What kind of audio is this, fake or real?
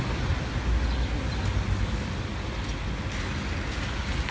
real